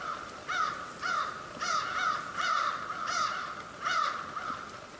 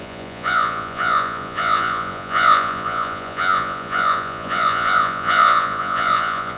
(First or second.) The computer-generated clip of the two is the second